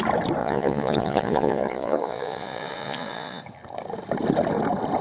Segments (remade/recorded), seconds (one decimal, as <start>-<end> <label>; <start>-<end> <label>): 0.0-0.4 recorded; 0.4-3.4 remade; 3.4-5.0 recorded